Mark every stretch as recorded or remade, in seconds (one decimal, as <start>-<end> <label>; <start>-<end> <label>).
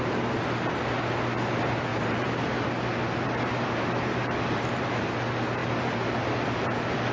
0.0-1.9 recorded; 1.9-2.5 remade; 2.5-3.0 recorded; 3.0-5.1 remade; 5.1-5.6 recorded; 5.6-6.3 remade; 6.3-7.1 recorded